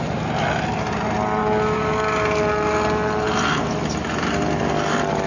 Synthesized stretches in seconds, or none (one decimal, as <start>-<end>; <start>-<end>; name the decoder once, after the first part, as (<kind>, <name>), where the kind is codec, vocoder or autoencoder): none